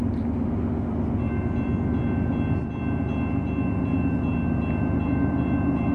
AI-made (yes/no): no